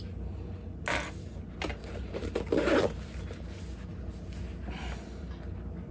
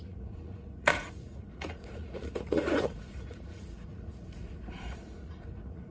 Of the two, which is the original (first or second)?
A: first